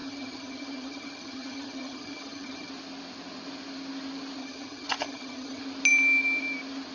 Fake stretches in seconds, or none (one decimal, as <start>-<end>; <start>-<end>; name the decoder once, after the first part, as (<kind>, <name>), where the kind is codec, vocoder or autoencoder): 0.0-2.7 (vocoder, HiFi-GAN); 4.4-5.6